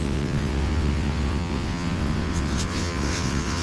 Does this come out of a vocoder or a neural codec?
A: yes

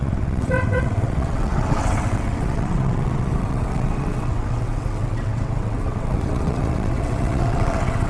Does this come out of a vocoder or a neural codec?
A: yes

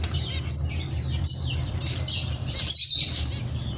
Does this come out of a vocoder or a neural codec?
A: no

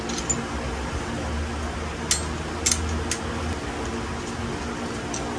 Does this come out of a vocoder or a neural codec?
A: no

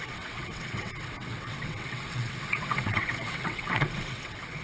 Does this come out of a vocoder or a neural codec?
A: yes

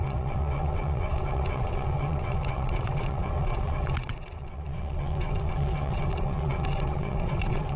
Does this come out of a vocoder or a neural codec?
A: yes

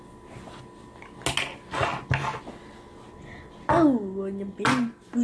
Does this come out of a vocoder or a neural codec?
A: no